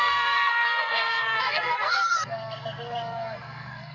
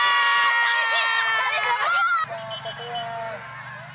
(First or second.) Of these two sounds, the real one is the second